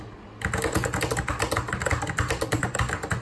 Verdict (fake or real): real